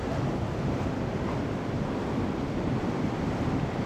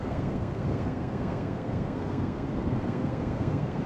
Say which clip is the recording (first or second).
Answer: first